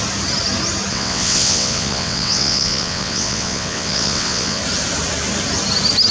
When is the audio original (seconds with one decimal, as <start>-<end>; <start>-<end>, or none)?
0.0-0.9; 4.6-6.1